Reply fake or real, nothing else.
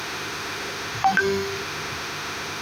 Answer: fake